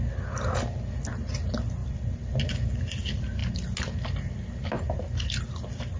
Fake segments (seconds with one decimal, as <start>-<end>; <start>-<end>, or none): none